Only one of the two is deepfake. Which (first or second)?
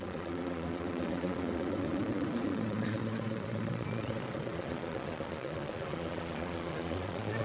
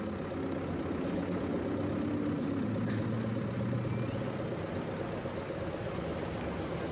first